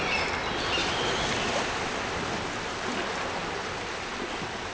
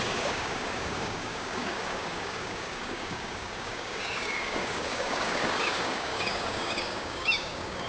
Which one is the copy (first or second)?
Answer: second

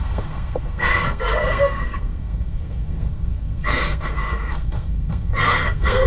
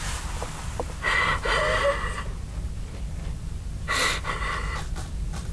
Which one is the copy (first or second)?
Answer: first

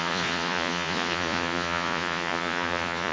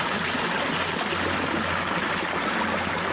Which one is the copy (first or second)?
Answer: first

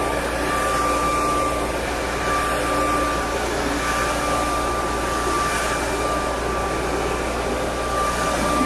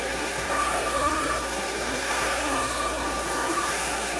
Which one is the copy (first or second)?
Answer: second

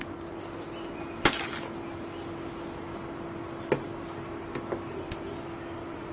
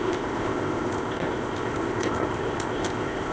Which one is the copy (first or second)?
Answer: second